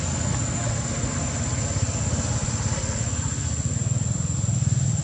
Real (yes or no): yes